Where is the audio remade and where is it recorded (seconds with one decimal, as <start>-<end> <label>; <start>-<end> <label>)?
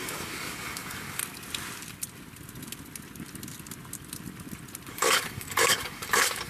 0.0-1.2 remade; 1.2-4.9 recorded; 4.9-6.5 remade